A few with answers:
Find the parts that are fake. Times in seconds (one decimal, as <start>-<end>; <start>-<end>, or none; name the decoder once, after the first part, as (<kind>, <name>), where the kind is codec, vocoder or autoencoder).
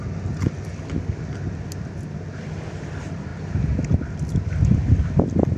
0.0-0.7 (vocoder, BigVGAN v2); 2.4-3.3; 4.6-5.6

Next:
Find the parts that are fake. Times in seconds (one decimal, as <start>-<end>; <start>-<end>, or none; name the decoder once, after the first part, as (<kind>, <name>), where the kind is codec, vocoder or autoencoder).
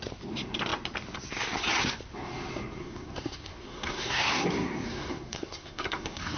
2.8-6.4 (codec, SNAC)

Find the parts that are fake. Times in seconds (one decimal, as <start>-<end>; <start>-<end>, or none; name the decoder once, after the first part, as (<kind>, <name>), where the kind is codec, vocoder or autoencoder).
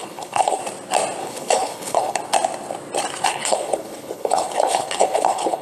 0.0-0.6 (codec, HILCodec); 1.2-2.2; 3.3-5.6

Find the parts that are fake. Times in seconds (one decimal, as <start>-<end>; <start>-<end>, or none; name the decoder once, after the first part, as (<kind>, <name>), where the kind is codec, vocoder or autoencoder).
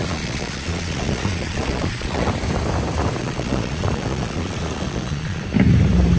0.0-2.3 (vocoder, Vocos); 3.2-5.4